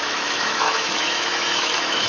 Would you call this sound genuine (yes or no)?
no